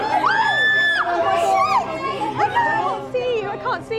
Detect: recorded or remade recorded